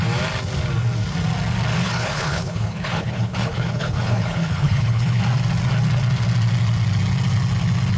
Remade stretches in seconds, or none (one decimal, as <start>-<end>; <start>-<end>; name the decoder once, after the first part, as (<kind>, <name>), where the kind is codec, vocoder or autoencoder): 1.8-5.2 (codec, HILCodec)